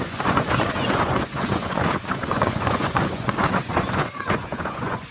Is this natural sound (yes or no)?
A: no